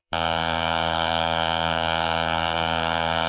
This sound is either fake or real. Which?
fake